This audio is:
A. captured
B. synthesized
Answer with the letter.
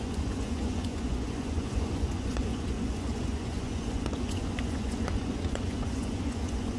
B